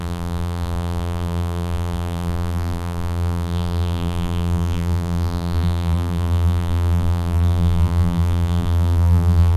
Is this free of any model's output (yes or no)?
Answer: no